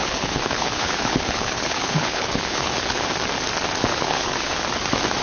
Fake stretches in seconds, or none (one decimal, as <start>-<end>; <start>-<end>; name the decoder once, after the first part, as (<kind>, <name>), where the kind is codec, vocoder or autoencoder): 0.0-3.1 (codec, HILCodec); 3.9-4.6